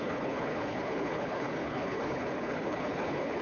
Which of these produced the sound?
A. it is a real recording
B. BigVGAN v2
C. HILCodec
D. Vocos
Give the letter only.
C